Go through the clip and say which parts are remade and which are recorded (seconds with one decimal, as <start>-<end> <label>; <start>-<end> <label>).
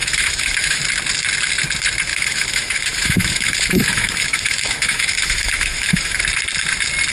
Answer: 0.0-0.8 remade; 0.8-2.1 recorded; 2.1-6.2 remade; 6.2-7.1 recorded